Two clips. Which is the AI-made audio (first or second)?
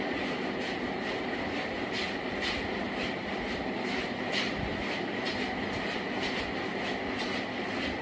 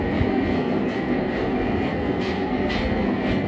second